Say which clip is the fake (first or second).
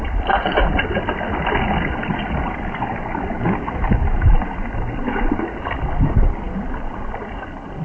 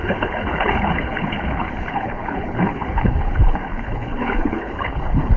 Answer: second